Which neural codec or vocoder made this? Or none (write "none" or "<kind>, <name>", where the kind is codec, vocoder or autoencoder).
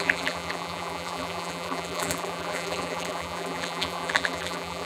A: vocoder, BigVGAN v2